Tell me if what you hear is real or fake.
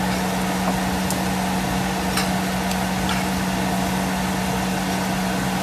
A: real